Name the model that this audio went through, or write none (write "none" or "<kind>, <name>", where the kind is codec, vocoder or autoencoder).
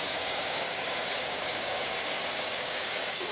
codec, DAC